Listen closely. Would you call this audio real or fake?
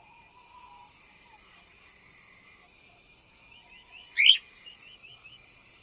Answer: real